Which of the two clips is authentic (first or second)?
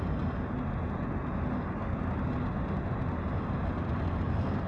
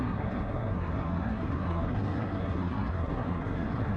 first